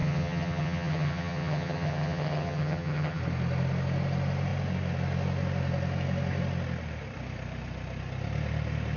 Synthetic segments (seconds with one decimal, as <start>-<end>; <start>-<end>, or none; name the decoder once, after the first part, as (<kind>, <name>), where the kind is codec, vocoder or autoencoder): 0.0-3.2 (vocoder, HiFi-GAN)